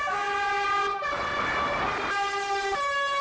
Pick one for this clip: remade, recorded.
recorded